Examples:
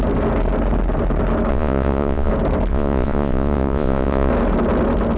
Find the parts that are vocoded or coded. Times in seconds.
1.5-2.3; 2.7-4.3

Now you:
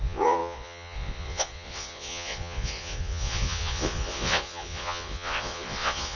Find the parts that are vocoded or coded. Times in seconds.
0.0-6.2

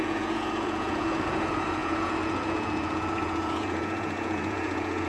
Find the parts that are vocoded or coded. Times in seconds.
0.0-5.1

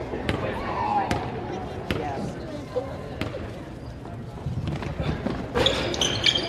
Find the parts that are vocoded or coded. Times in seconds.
none

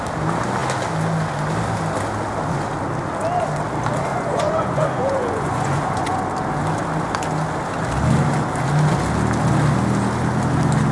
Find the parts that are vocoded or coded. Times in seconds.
4.1-6.2

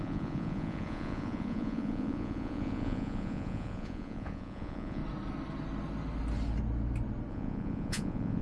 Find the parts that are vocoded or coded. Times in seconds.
0.0-5.0; 7.3-8.4